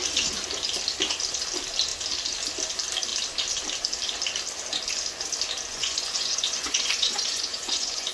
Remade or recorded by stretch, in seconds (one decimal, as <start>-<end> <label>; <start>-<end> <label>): 0.0-5.7 recorded; 5.7-8.1 remade